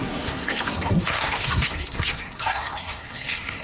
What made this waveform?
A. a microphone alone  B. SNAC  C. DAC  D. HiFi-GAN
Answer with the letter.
B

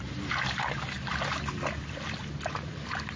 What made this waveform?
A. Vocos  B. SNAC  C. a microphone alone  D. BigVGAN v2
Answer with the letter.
C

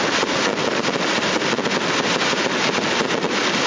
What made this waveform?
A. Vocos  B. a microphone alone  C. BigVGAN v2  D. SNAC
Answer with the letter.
B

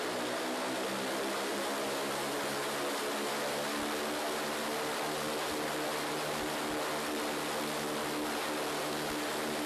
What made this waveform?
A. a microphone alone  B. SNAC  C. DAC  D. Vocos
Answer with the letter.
A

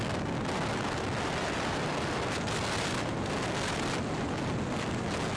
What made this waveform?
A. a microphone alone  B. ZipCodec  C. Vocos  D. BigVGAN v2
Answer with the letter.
A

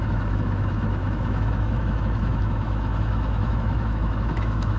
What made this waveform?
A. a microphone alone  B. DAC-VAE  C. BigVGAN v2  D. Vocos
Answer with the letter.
B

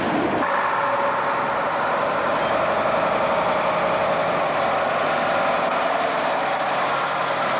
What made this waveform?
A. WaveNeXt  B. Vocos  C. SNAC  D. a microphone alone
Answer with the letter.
D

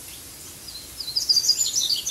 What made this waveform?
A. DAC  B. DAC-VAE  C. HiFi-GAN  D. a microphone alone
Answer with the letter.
D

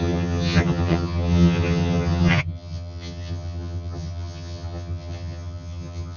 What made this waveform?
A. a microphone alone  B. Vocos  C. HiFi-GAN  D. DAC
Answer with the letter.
C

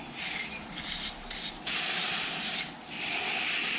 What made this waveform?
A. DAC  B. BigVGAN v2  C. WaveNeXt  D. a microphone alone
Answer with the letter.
D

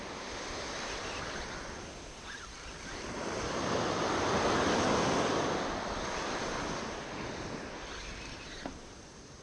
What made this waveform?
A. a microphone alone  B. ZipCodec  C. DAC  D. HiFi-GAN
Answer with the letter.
A